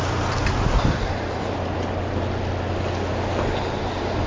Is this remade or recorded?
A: recorded